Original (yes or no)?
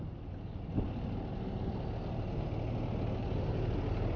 yes